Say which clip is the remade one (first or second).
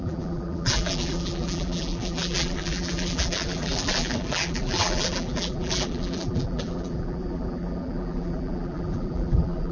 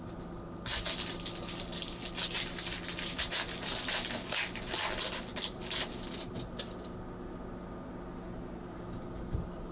first